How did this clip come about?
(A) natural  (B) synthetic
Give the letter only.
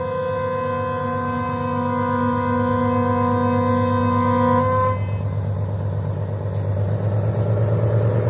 A